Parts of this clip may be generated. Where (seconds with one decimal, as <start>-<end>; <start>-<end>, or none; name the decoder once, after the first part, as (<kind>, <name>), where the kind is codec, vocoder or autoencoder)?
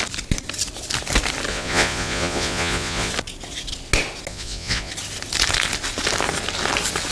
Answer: 1.5-3.1 (vocoder, Vocos); 4.3-4.9